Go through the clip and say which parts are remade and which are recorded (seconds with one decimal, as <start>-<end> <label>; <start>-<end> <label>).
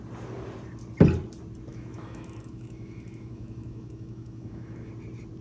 0.0-1.7 recorded; 1.7-4.9 remade; 4.9-5.4 recorded